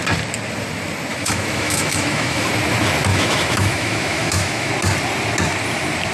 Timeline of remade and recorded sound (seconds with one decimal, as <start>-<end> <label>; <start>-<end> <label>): 0.0-1.1 recorded; 1.1-2.5 remade; 2.5-3.1 recorded; 3.1-4.7 remade; 4.7-6.1 recorded